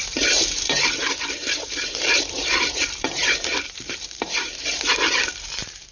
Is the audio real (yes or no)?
no